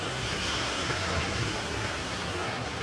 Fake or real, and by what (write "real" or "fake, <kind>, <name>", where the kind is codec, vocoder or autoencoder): fake, codec, SNAC